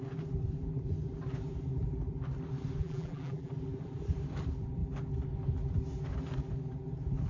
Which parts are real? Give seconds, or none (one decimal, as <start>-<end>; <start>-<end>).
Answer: 0.0-2.8; 3.5-7.3